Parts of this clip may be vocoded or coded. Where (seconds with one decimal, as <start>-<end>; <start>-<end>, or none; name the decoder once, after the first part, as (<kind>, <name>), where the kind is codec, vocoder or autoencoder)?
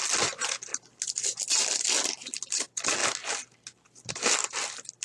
none